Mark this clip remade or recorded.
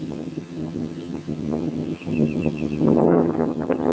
remade